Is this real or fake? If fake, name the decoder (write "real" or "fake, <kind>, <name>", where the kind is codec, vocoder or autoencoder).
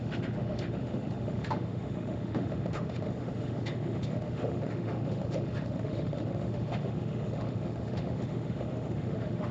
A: fake, autoencoder, DAC-VAE